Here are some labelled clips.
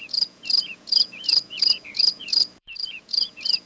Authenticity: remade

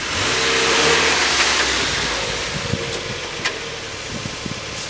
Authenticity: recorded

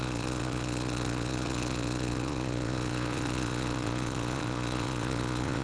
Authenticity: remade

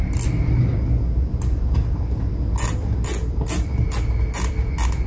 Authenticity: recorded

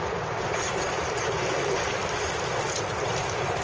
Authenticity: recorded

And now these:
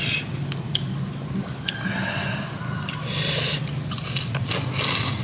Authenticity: recorded